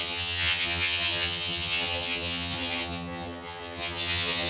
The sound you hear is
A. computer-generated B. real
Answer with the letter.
A